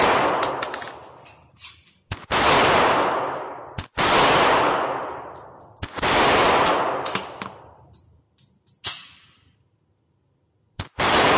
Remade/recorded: recorded